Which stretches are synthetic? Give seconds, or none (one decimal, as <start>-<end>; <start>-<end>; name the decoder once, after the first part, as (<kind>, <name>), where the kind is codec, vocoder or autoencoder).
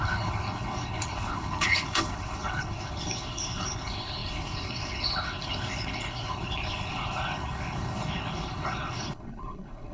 0.0-9.9 (codec, HILCodec)